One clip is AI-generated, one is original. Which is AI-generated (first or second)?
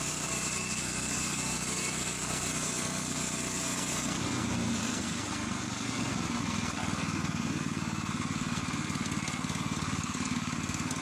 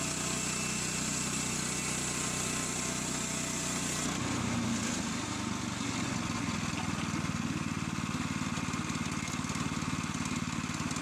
first